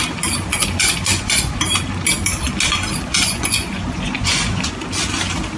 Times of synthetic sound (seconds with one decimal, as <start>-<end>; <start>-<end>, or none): 0.5-1.6; 3.1-4.7